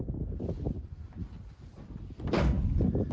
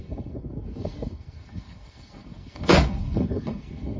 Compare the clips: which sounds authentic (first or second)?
first